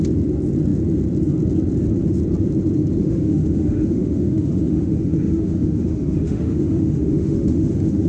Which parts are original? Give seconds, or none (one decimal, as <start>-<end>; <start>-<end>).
0.0-3.0